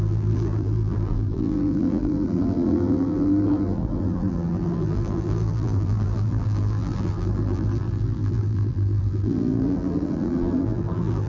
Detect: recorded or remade remade